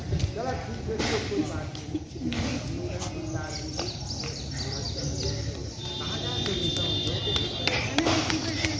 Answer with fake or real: real